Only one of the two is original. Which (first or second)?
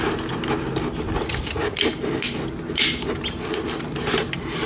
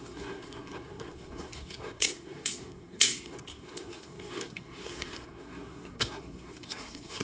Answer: first